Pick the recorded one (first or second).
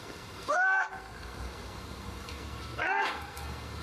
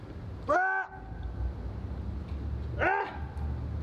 second